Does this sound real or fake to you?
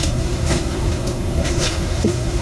fake